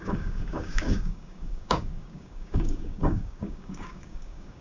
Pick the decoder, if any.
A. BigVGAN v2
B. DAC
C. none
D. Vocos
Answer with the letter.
B